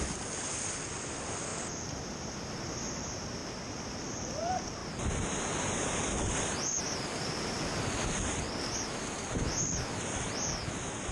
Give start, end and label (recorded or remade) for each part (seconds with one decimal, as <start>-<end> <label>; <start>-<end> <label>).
0.0-11.1 recorded